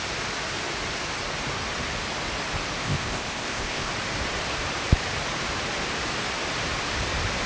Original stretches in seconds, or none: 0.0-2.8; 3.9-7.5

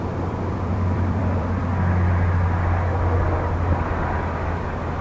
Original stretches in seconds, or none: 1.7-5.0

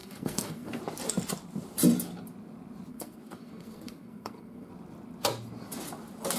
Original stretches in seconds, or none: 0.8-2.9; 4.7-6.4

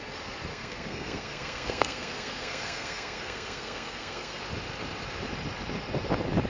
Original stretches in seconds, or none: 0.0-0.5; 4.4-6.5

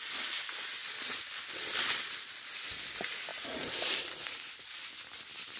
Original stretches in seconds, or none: 0.0-3.3; 4.6-5.6

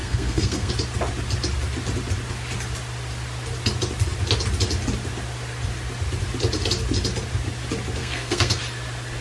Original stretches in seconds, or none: 0.7-8.0; 8.6-9.2